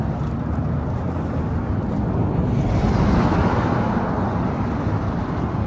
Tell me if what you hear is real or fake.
real